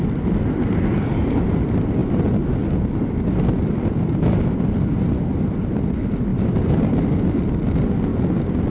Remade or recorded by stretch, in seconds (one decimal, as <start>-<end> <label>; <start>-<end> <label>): 0.0-8.7 recorded